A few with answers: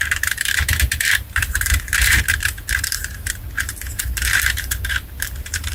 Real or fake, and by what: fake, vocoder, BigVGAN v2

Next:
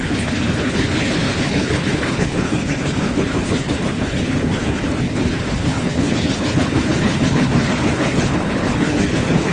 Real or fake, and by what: fake, codec, HILCodec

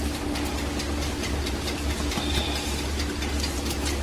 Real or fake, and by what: real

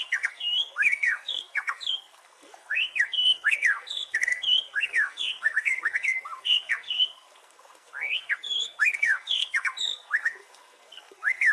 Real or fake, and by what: fake, codec, SNAC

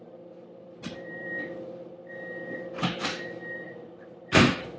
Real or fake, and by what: fake, vocoder, BigVGAN v2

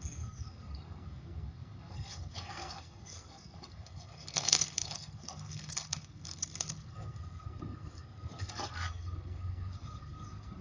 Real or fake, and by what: fake, codec, SNAC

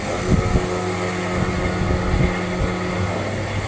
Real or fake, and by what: real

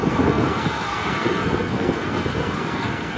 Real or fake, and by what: fake, codec, SNAC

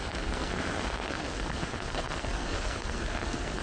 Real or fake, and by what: fake, codec, SNAC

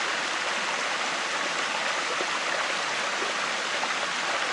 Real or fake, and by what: real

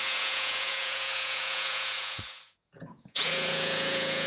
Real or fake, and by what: fake, vocoder, Vocos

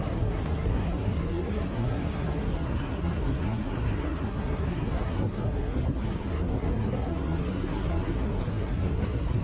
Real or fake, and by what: fake, codec, SNAC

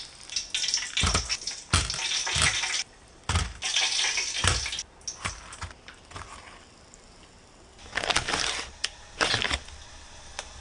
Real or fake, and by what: real